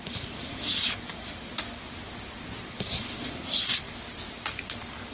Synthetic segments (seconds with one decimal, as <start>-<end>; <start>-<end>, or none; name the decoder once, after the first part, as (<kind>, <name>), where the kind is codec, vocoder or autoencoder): none